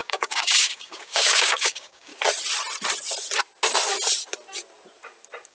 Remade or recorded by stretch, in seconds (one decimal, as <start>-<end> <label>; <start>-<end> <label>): 0.0-2.1 remade; 2.1-5.5 recorded